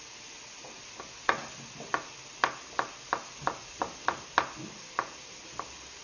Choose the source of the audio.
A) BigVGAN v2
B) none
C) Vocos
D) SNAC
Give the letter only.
B